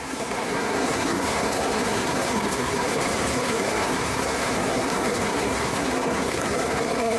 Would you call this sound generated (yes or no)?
yes